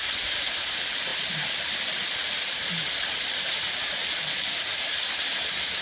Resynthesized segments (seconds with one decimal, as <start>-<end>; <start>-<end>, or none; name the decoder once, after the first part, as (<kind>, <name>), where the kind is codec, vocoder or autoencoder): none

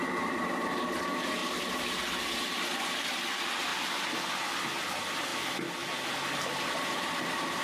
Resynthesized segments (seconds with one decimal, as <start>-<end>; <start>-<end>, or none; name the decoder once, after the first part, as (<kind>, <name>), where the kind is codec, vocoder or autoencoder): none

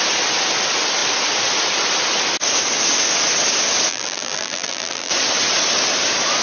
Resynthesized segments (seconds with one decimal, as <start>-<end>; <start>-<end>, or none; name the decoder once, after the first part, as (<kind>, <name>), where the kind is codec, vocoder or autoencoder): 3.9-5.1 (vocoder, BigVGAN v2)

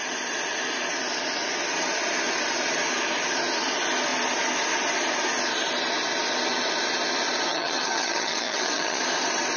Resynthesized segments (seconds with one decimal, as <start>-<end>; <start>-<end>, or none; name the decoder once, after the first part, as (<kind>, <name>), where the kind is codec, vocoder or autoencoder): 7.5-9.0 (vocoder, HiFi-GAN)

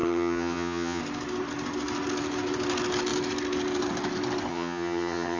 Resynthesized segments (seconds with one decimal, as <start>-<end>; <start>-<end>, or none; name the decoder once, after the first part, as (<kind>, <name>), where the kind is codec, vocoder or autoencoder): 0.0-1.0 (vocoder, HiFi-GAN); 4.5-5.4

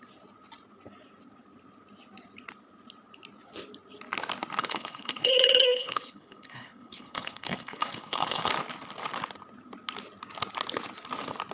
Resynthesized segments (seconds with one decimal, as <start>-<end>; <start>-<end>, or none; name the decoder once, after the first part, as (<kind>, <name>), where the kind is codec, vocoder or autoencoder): 4.6-8.5 (codec, HILCodec)

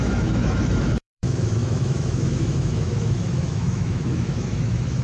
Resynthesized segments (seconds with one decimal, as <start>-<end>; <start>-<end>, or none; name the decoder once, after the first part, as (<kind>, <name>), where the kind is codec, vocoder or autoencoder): 0.0-5.0 (autoencoder, DAC-VAE)

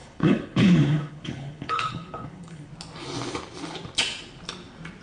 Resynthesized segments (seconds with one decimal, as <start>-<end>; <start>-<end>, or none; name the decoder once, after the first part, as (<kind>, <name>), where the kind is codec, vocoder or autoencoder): 0.0-2.7 (codec, HILCodec)